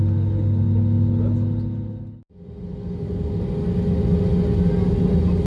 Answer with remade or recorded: recorded